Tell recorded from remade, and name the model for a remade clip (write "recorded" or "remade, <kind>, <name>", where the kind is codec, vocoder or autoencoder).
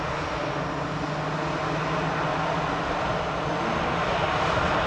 recorded